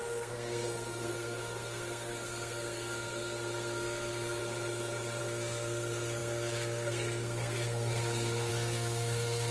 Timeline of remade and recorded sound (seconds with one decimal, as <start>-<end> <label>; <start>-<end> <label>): 0.0-4.4 remade; 4.4-5.2 recorded; 5.2-9.5 remade